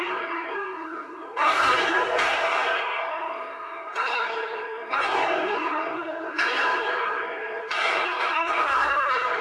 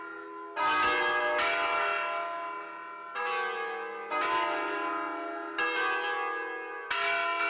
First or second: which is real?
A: second